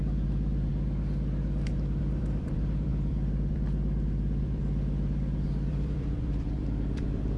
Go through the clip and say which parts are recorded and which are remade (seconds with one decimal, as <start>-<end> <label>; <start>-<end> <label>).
0.0-0.7 remade; 0.7-2.0 recorded; 2.0-7.4 remade